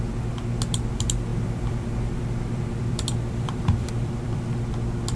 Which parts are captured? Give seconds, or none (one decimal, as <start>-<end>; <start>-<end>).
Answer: 0.0-1.3; 4.4-5.2